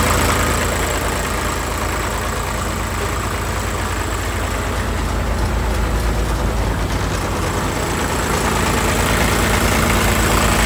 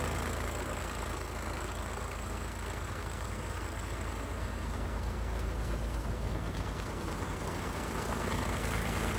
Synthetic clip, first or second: second